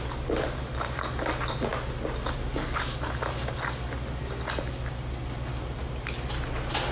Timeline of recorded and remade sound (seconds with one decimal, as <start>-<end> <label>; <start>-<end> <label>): 0.0-6.9 recorded